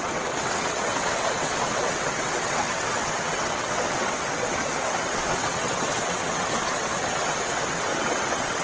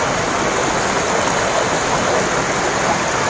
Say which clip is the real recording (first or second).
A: second